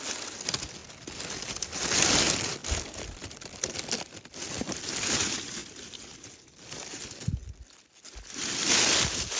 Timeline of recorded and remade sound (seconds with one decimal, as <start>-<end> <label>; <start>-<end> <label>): 0.0-2.6 recorded; 2.6-3.7 remade; 3.7-9.4 recorded